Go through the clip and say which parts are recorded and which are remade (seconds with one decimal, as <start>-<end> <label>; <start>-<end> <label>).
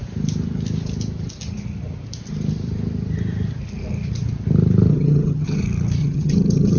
0.0-4.9 recorded; 4.9-5.6 remade; 5.6-6.0 recorded; 6.0-6.8 remade